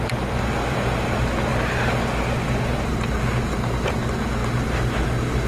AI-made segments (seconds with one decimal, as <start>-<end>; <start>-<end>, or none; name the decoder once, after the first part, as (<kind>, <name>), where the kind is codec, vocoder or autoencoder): none